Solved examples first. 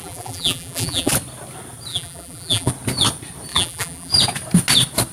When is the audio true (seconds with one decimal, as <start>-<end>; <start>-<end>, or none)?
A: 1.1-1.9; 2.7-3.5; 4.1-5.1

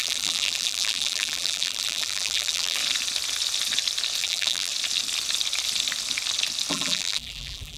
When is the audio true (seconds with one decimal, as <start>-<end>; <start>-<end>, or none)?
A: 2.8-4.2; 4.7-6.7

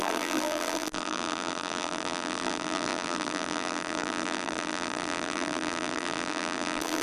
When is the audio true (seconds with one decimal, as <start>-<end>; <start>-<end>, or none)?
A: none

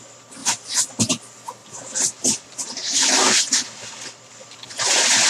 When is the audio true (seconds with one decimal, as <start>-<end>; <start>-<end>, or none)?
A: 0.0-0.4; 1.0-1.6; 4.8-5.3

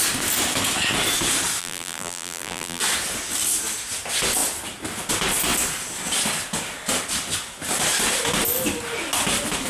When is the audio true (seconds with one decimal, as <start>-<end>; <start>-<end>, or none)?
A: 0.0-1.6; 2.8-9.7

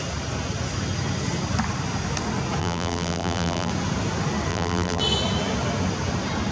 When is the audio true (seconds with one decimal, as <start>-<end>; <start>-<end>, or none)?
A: 0.0-2.6; 3.7-4.5; 5.0-6.5

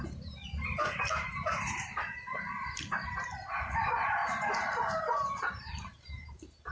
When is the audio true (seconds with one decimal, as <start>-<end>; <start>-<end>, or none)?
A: none

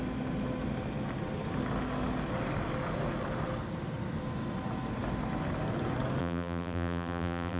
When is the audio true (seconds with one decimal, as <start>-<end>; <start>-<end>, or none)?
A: 0.0-6.2